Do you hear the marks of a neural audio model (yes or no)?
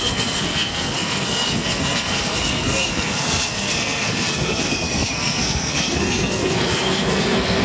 yes